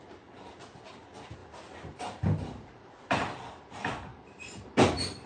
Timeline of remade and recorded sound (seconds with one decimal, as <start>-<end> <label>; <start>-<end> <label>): 0.0-4.1 recorded; 4.1-4.6 remade; 4.6-5.3 recorded